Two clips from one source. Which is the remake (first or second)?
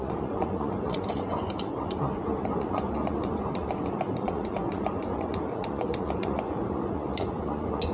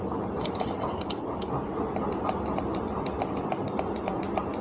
first